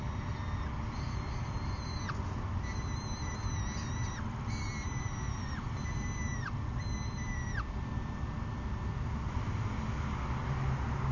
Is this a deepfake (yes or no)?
no